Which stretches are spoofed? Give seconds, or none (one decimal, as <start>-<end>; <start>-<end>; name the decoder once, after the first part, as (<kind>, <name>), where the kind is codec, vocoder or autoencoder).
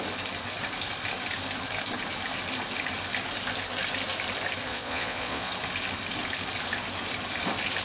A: 4.7-5.5 (vocoder, Vocos)